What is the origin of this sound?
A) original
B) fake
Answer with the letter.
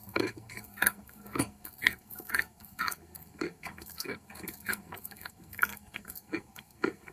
B